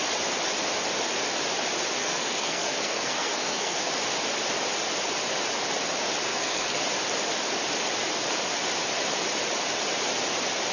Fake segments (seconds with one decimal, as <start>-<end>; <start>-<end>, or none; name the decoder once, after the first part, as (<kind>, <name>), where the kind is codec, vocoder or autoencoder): 2.0-3.9 (codec, SNAC); 6.3-6.8